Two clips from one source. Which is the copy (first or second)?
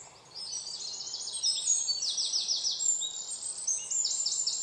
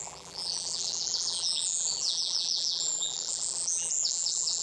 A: second